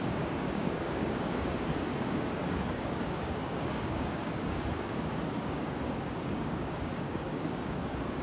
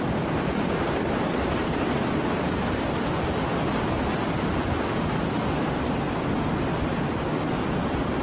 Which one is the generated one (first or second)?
first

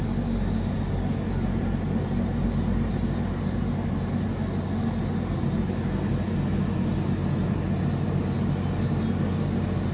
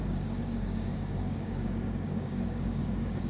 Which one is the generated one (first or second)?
second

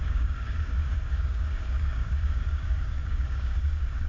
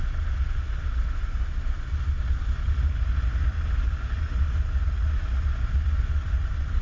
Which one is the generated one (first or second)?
first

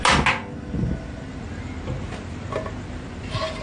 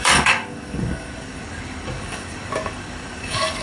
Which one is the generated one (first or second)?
second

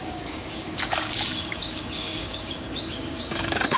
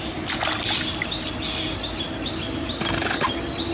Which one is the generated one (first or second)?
first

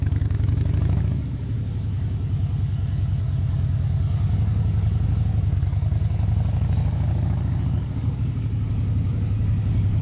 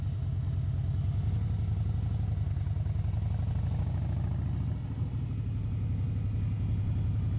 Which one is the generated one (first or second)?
first